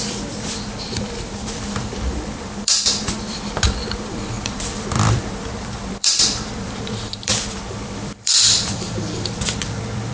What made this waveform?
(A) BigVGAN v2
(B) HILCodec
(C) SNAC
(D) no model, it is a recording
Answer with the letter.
A